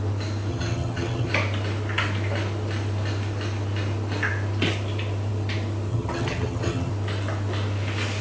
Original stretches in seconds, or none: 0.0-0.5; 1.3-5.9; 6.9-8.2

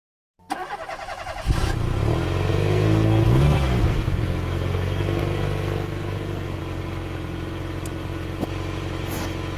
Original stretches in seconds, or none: 0.0-2.5; 6.6-9.6